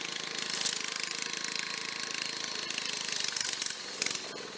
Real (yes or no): yes